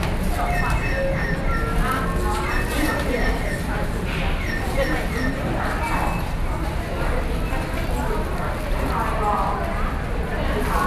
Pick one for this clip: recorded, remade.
recorded